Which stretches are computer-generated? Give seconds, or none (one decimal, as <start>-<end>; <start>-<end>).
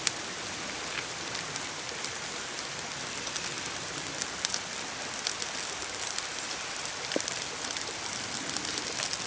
6.3-6.8